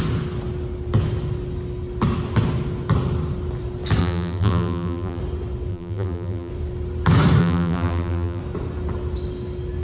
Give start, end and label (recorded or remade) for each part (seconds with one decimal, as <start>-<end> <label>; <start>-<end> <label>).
0.0-4.0 recorded; 4.0-5.2 remade; 5.2-5.7 recorded; 5.7-6.5 remade; 6.5-7.4 recorded; 7.4-8.4 remade; 8.4-9.8 recorded